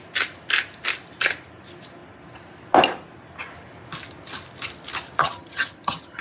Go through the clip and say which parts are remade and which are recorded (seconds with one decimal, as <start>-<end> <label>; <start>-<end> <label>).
0.0-5.2 recorded; 5.2-6.2 remade